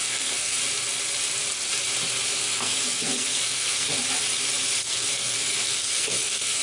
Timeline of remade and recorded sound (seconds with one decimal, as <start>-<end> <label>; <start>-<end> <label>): 0.0-0.6 remade; 0.6-2.4 recorded; 2.4-3.9 remade; 3.9-4.8 recorded; 4.8-6.6 remade